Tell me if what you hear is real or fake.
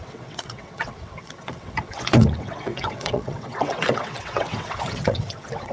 fake